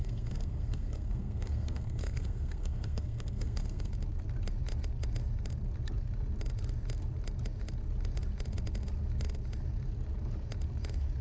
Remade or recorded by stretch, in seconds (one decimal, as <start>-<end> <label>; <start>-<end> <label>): 0.0-3.9 remade; 3.9-11.2 recorded